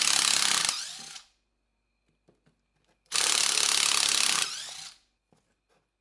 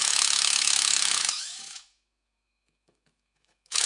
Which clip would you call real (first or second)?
first